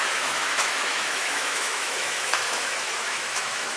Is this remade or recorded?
remade